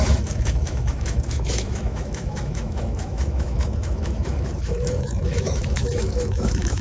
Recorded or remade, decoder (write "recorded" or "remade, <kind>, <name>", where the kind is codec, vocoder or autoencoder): remade, autoencoder, DAC-VAE